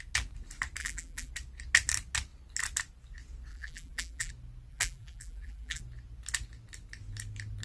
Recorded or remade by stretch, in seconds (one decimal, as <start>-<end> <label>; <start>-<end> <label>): 0.0-0.8 recorded; 0.8-1.3 remade; 1.3-3.5 recorded; 3.5-4.3 remade; 4.3-4.7 recorded; 4.7-5.8 remade; 5.8-7.6 recorded